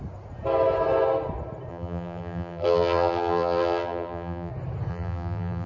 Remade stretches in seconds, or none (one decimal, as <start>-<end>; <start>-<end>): 1.7-4.5; 4.9-5.7